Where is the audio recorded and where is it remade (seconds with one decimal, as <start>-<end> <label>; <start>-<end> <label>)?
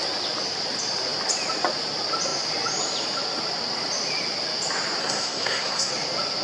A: 0.0-5.0 recorded; 5.0-5.9 remade; 5.9-6.4 recorded